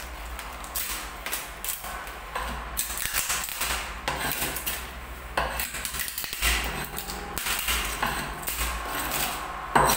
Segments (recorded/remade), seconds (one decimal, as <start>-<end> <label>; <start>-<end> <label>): 0.0-10.0 recorded